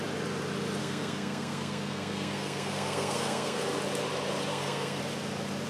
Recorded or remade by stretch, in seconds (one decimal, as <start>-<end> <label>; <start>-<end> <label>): 0.0-0.8 recorded; 0.8-3.6 remade; 3.6-4.5 recorded; 4.5-5.0 remade; 5.0-5.7 recorded